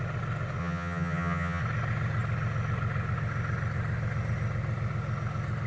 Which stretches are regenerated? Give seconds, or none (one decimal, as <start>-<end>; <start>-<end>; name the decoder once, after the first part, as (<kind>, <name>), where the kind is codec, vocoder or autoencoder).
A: 0.6-1.6 (vocoder, HiFi-GAN)